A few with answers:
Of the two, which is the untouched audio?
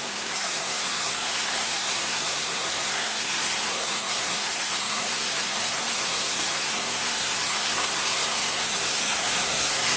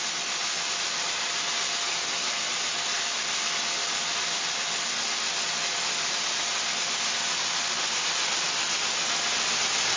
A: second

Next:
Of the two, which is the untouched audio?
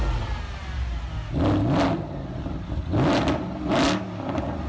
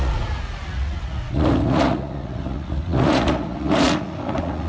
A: first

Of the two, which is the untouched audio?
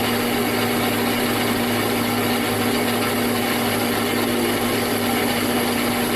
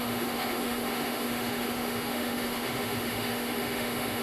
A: first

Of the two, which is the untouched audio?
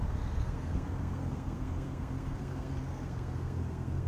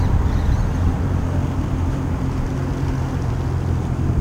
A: second